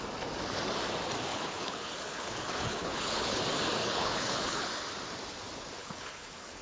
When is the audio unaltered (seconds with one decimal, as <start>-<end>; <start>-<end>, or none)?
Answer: 0.0-1.3; 3.4-3.8; 4.7-5.8